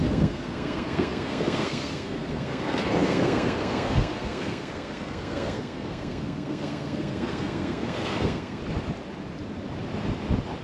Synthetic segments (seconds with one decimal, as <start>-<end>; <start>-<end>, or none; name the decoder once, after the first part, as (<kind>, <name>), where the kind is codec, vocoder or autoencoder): 0.0-8.6 (codec, SNAC)